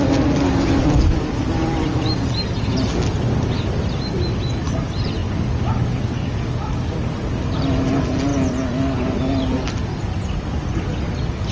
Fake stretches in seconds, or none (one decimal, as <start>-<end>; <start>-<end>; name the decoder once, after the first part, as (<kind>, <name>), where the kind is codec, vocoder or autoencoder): none